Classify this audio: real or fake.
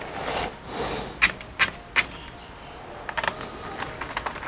real